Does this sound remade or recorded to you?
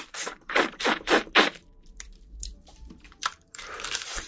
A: remade